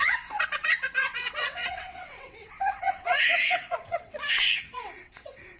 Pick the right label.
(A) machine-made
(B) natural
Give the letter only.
A